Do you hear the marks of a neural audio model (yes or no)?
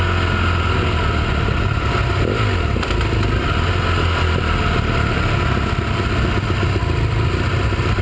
no